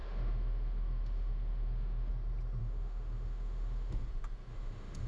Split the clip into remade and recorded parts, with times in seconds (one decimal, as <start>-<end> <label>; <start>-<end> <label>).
0.0-2.1 remade; 2.1-2.6 recorded; 2.6-4.1 remade; 4.1-4.5 recorded; 4.5-5.1 remade